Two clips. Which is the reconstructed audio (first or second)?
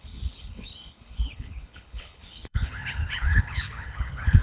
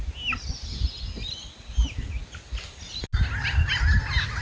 first